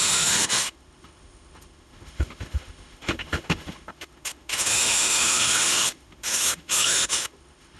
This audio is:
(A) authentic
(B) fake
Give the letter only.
B